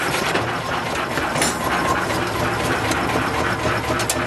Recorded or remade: recorded